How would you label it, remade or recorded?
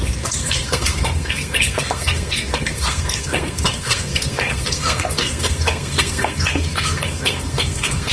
remade